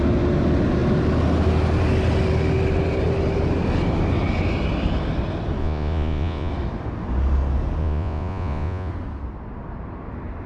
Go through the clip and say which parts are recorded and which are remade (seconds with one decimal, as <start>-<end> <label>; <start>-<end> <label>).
0.0-5.6 recorded; 5.6-6.5 remade; 6.5-7.8 recorded; 7.8-8.9 remade; 8.9-10.5 recorded